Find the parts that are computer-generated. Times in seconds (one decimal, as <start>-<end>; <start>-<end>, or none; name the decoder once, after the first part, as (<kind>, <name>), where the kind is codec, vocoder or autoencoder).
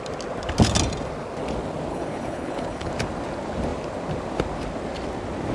1.9-2.9 (codec, HILCodec)